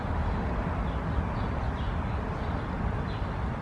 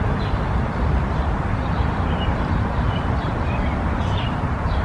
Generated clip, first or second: second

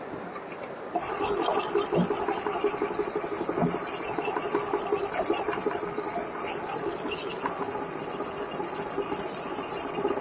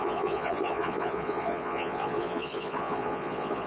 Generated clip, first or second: second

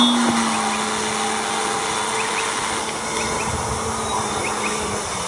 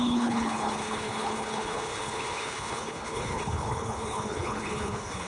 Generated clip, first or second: second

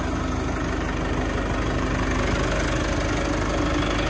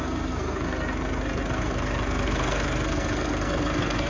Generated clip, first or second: second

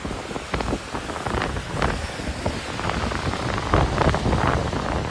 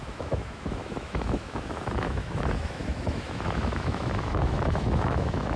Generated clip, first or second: second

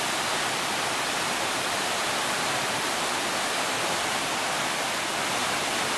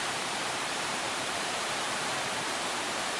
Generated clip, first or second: second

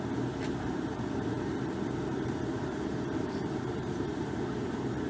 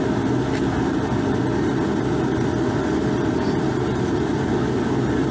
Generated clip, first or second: first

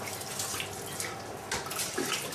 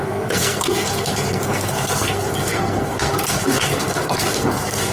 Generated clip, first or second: second